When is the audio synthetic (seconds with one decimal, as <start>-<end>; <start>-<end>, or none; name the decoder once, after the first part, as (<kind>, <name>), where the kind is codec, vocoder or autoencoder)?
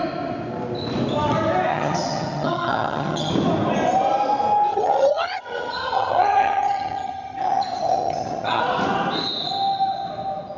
1.7-3.3 (vocoder, HiFi-GAN); 4.7-8.6